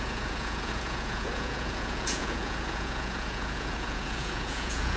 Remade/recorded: remade